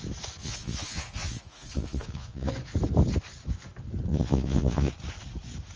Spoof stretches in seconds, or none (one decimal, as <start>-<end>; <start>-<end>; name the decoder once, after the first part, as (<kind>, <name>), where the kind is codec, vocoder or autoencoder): 0.4-2.5 (vocoder, Vocos); 4.1-4.9